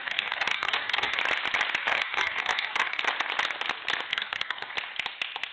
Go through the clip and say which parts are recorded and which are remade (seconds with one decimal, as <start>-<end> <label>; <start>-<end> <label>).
0.0-1.2 remade; 1.2-1.8 recorded; 1.8-3.0 remade; 3.0-4.1 recorded; 4.1-4.7 remade; 4.7-5.5 recorded